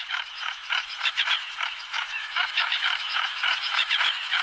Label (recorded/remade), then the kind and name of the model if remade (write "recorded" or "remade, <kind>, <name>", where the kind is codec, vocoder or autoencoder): remade, autoencoder, DAC-VAE